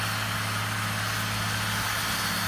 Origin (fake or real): real